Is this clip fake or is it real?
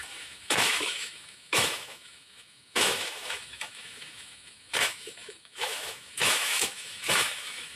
fake